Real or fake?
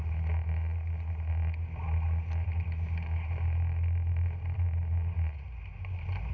real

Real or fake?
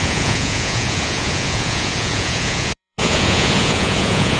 fake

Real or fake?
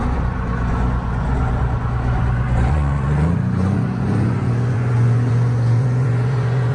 fake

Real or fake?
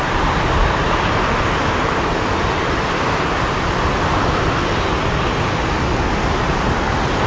real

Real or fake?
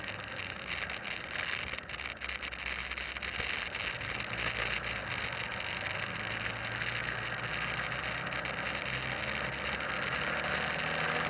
real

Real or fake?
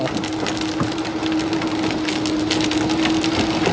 real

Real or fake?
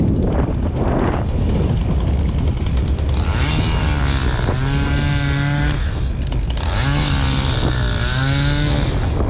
real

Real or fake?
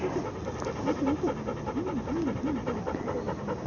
real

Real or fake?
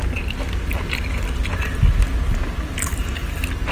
real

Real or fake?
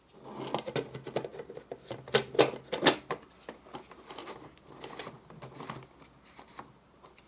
real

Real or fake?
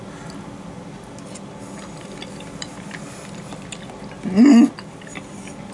real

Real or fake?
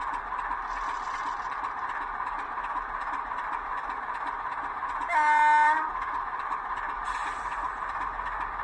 real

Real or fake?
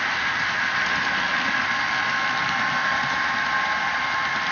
real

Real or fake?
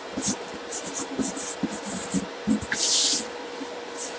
fake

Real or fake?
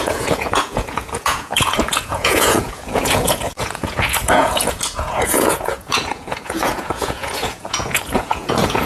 fake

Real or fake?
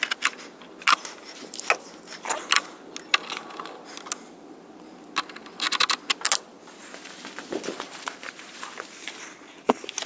real